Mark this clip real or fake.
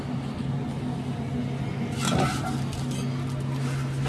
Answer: real